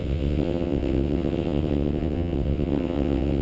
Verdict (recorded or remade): remade